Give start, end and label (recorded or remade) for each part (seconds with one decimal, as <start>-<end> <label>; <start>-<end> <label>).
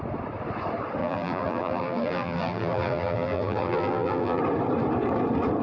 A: 0.0-1.0 recorded; 1.0-4.4 remade; 4.4-5.6 recorded